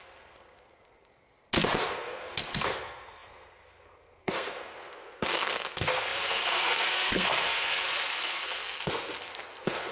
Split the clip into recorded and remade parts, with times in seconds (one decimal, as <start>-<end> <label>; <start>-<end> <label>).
0.0-1.1 remade; 1.1-1.8 recorded; 1.8-9.9 remade